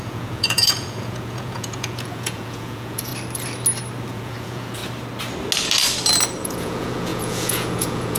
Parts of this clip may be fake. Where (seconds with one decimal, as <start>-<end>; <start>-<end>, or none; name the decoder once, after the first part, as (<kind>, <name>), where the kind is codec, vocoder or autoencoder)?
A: 0.0-3.1 (vocoder, Vocos); 4.1-4.8; 6.4-8.2